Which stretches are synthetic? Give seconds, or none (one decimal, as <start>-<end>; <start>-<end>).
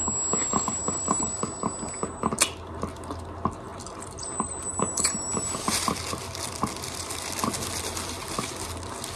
none